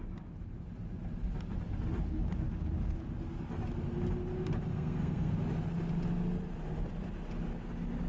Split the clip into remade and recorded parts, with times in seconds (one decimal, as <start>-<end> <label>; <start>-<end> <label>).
0.0-4.7 recorded; 4.7-5.3 remade; 5.3-8.1 recorded